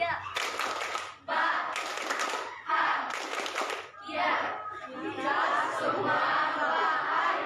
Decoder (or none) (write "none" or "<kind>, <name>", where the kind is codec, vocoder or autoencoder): none